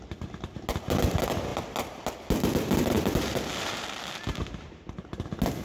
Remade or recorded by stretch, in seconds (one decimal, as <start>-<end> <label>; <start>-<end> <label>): 0.0-5.6 recorded